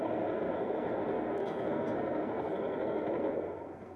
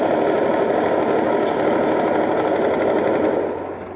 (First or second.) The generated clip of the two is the first